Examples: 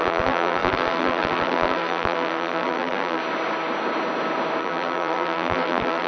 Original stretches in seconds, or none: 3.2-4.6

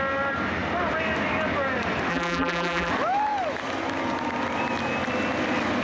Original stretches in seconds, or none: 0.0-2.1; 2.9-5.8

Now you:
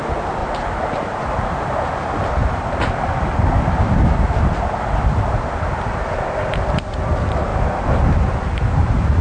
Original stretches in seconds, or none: 0.0-0.4; 1.9-9.2

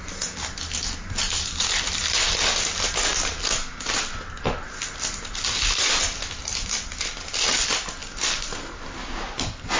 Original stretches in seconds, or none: 3.1-6.4

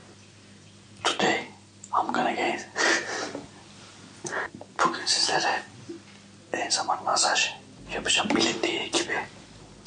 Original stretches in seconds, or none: 3.6-7.1; 8.2-9.9